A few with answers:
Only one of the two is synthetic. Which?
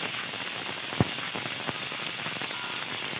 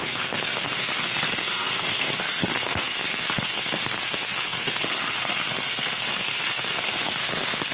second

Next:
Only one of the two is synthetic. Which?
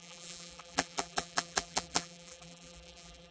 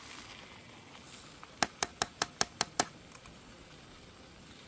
first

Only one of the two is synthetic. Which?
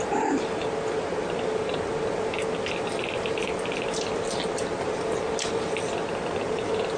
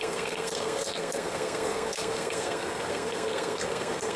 second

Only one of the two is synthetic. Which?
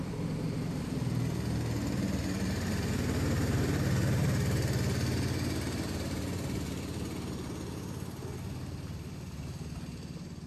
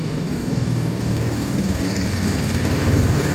second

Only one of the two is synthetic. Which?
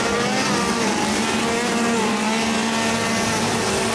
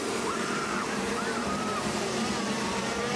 second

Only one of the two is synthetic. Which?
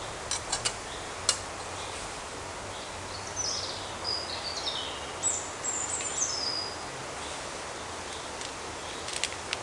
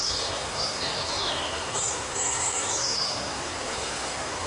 second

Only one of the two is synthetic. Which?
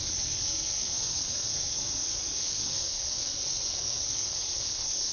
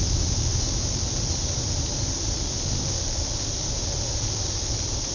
first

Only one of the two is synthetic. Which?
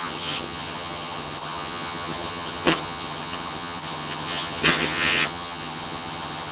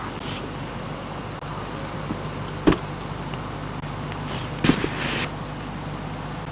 first